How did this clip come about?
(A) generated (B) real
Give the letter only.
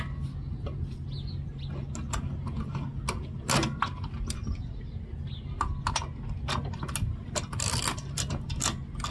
B